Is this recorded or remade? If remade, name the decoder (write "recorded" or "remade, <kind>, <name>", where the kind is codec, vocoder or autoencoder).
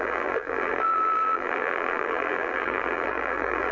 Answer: remade, vocoder, BigVGAN v2